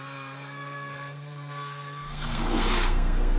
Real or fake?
fake